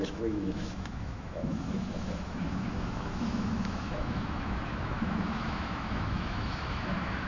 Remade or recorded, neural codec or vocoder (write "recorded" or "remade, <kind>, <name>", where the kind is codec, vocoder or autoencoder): remade, autoencoder, DAC-VAE